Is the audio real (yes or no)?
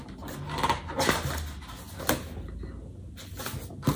yes